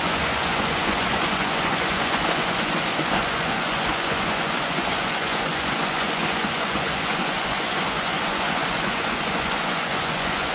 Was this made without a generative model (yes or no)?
no